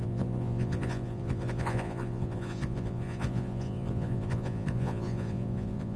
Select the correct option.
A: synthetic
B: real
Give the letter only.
A